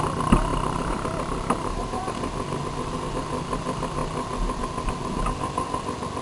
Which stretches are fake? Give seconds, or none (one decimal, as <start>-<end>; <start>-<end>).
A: 0.5-2.1